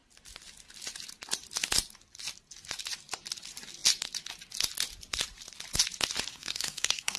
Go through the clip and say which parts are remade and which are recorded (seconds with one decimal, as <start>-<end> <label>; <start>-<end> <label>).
0.0-6.3 recorded; 6.3-7.2 remade